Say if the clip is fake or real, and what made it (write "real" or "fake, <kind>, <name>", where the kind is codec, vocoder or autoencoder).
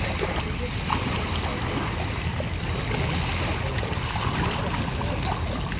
real